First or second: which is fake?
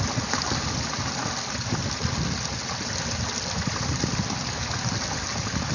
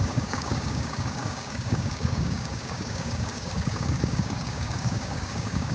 second